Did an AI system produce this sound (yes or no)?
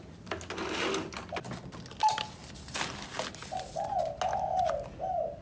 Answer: no